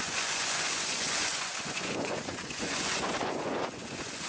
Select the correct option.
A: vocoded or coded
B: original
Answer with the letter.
A